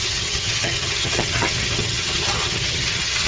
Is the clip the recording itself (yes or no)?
no